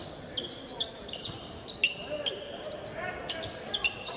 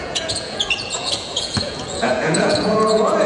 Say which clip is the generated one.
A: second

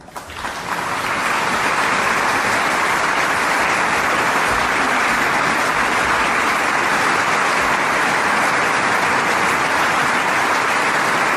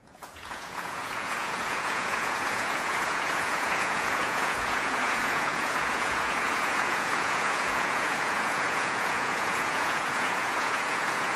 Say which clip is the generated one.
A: second